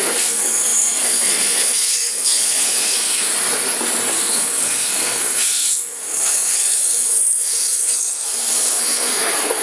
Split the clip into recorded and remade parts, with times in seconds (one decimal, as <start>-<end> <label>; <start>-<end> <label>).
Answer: 0.0-3.3 remade; 3.3-4.1 recorded; 4.1-9.6 remade